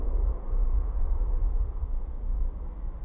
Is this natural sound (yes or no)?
yes